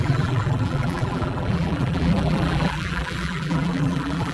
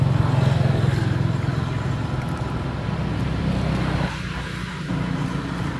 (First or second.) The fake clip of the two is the first